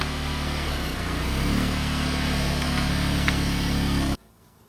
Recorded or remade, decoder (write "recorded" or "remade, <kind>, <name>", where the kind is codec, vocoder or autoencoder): remade, codec, SNAC